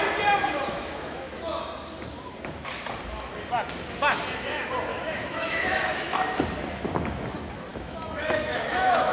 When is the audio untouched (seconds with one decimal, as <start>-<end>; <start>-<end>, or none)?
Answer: 0.0-0.4; 1.6-4.9; 6.2-7.7